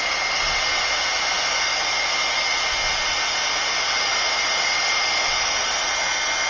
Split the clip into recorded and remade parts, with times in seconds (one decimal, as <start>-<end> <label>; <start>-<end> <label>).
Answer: 0.0-6.5 recorded